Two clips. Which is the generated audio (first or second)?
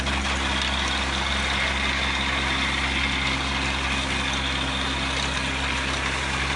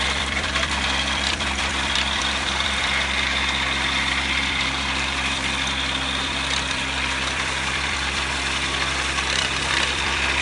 second